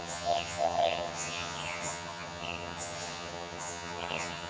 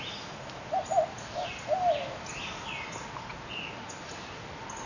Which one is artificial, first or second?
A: first